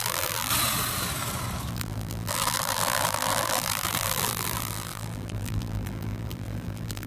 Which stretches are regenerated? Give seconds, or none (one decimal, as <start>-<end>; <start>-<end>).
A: 0.0-0.5; 1.7-7.1